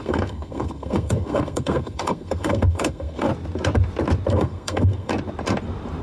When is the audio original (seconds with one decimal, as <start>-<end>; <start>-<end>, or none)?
3.3-4.3; 5.1-6.0